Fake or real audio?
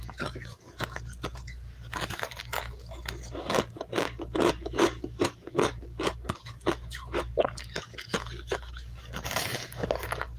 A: fake